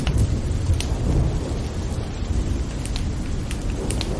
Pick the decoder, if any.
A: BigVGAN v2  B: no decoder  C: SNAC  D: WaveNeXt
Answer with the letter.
B